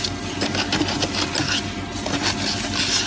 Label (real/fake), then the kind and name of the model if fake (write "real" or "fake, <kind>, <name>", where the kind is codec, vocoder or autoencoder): real